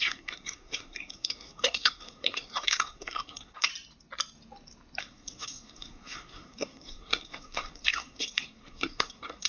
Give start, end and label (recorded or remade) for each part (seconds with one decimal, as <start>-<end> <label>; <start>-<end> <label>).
0.0-3.7 remade; 3.7-5.0 recorded; 5.0-9.5 remade